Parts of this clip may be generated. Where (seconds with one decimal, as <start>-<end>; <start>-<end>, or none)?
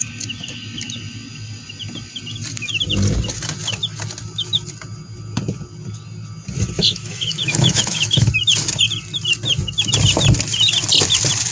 6.8-8.3